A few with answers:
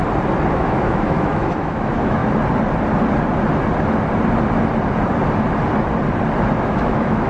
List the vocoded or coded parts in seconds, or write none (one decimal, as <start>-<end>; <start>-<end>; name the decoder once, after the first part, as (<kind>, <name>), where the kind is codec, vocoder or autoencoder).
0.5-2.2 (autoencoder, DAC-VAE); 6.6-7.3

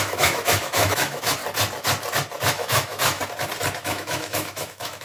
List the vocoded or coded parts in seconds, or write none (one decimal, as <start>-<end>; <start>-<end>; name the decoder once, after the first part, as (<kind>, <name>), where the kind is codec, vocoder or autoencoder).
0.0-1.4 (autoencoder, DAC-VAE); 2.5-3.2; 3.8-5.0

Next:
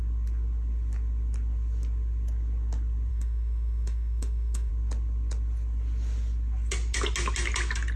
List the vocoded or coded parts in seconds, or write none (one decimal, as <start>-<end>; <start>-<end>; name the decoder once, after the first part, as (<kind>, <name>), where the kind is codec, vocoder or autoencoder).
3.1-4.7 (autoencoder, DAC-VAE)

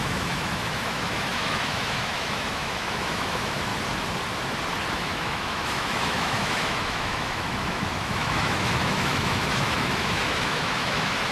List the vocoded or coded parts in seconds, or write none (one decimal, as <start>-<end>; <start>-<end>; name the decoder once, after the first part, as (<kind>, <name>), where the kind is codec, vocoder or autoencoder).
0.0-3.7 (autoencoder, DAC-VAE); 4.9-11.3